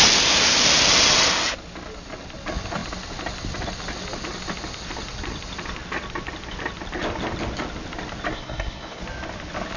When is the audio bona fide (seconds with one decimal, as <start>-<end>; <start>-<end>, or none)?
0.0-8.3; 9.0-9.8